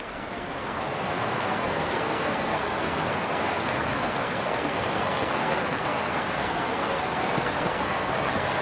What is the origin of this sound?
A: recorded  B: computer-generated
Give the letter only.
B